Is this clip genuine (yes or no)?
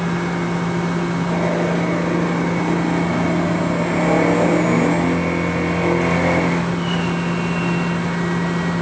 yes